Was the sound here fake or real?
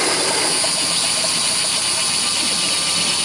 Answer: real